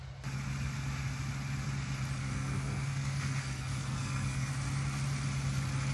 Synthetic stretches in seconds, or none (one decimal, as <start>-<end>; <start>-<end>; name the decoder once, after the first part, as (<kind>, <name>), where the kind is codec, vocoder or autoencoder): 2.2-4.5 (codec, SNAC)